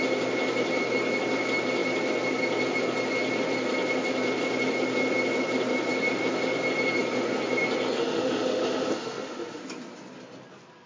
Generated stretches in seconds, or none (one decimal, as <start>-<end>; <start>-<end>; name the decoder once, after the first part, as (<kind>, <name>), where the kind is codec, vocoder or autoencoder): 8.0-9.6 (autoencoder, DAC-VAE)

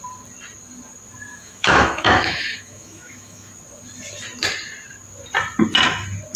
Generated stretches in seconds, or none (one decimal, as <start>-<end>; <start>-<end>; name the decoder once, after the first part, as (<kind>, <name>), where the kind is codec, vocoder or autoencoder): 1.3-3.5 (autoencoder, DAC-VAE)

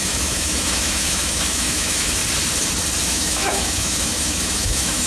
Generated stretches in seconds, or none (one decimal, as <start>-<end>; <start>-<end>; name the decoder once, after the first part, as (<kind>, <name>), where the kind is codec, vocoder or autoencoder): 0.0-2.2 (autoencoder, DAC-VAE); 3.0-5.1

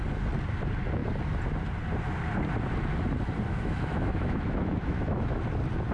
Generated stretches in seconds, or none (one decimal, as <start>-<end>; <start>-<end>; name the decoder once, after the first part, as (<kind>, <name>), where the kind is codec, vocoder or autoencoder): 3.5-5.4 (autoencoder, DAC-VAE)

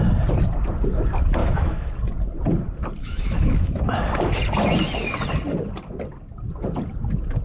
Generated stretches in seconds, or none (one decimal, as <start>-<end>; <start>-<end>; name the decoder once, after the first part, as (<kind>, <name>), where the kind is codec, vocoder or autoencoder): 1.4-1.9 (autoencoder, DAC-VAE); 3.0-3.9